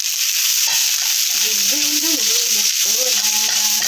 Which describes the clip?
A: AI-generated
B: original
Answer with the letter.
A